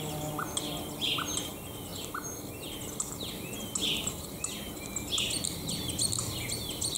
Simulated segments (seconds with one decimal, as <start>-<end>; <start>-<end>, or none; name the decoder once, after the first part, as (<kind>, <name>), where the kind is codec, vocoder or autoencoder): none